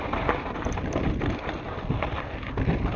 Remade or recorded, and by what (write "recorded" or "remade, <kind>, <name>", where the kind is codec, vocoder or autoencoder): recorded